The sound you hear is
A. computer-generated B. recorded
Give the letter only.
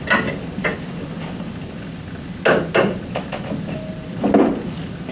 B